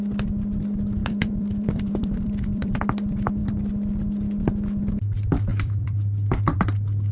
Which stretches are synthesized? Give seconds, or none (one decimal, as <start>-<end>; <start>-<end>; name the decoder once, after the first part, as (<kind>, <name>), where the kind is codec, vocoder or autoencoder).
1.0-2.7 (vocoder, BigVGAN v2); 5.5-7.1